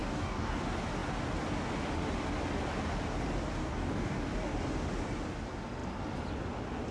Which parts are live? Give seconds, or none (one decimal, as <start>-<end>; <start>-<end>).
0.6-3.6; 4.3-6.9